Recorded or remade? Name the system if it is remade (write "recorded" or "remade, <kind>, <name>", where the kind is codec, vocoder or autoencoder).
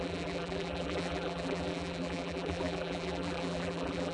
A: remade, vocoder, BigVGAN v2